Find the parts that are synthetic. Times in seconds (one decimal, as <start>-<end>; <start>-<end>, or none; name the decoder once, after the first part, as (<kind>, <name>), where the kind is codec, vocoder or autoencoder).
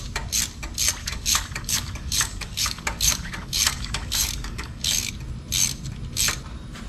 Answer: 1.0-5.1 (codec, DAC)